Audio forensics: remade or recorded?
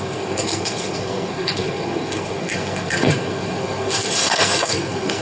remade